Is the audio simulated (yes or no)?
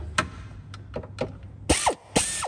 no